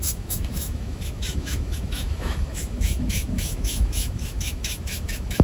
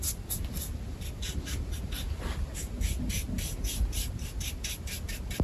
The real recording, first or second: second